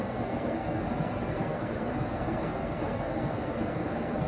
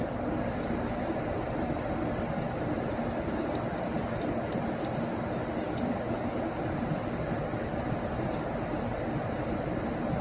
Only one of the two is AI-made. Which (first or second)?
first